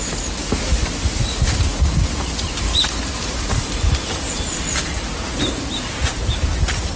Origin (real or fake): real